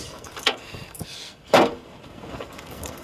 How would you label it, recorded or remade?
remade